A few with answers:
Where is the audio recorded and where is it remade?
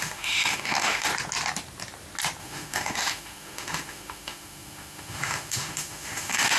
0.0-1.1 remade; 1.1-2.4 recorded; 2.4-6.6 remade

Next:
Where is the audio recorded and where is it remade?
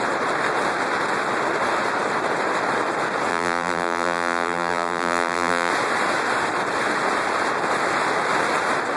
0.0-3.3 recorded; 3.3-5.7 remade; 5.7-9.0 recorded